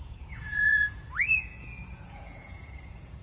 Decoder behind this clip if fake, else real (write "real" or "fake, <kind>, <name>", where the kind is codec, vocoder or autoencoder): fake, vocoder, Vocos